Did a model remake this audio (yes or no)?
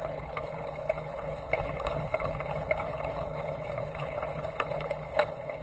yes